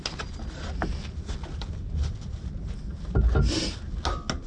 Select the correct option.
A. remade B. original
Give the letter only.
B